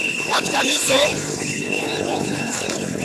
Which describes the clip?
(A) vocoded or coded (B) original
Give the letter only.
A